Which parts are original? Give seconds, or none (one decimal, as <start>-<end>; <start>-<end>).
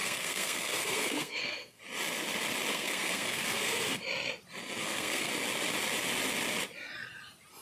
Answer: 1.8-2.7; 4.0-4.8; 5.3-7.6